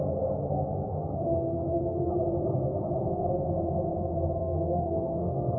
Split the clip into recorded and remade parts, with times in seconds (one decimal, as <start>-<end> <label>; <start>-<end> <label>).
0.0-0.9 recorded; 0.9-2.1 remade; 2.1-4.4 recorded; 4.4-5.6 remade